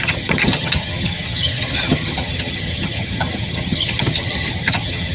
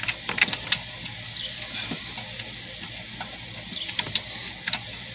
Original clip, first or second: second